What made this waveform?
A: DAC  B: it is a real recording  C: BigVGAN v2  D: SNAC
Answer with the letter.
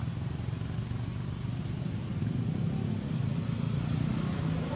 B